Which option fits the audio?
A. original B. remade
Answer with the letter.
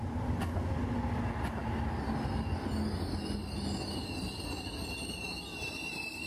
A